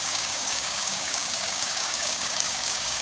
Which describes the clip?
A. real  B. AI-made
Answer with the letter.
B